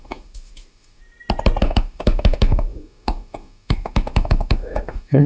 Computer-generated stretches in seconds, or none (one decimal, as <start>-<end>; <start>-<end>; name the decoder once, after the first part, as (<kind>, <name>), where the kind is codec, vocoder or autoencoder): 0.0-1.0 (autoencoder, DAC-VAE); 1.6-5.3